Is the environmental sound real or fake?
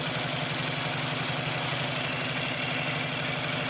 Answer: real